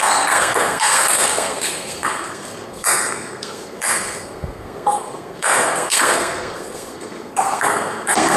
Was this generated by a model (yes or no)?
yes